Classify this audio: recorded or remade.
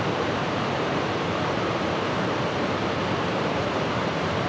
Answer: remade